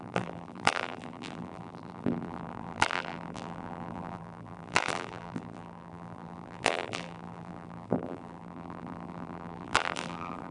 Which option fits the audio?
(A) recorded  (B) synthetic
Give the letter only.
B